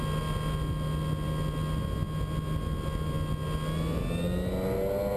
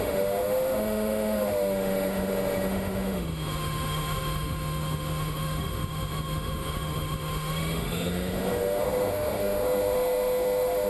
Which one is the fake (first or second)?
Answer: second